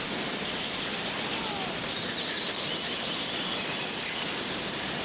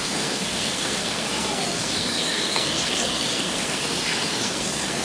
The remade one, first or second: second